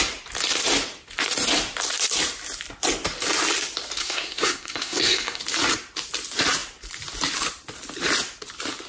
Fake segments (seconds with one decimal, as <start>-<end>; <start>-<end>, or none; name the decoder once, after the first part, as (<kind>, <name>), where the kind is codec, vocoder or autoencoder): 4.0-5.4 (codec, SNAC)